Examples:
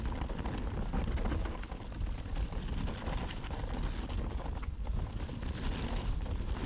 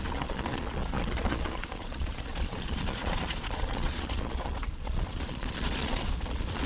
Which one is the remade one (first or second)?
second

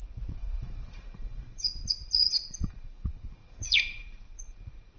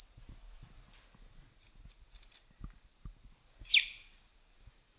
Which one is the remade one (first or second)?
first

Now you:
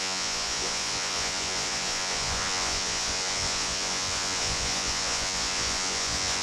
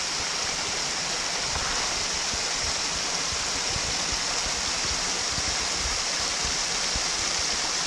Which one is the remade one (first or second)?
first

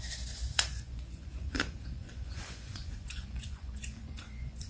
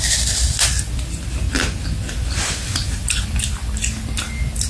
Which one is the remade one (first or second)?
first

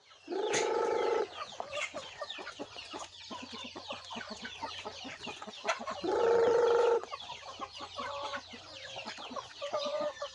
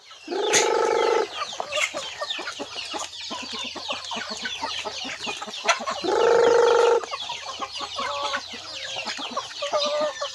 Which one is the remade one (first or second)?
first